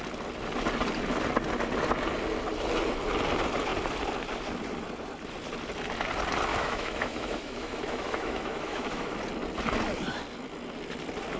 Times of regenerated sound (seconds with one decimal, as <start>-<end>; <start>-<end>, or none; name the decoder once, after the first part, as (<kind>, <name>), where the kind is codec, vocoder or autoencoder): 6.5-9.2 (autoencoder, DAC-VAE)